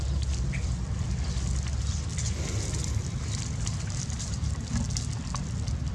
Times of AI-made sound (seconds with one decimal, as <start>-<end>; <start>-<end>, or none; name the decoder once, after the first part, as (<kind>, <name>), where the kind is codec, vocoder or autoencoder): none